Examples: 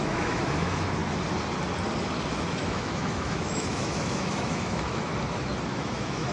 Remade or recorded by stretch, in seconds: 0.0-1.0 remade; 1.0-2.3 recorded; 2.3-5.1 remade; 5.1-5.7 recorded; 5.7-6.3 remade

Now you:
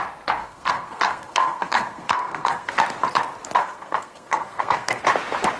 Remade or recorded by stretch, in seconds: 0.0-0.4 recorded; 0.4-2.7 remade; 2.7-3.6 recorded; 3.6-5.0 remade; 5.0-5.6 recorded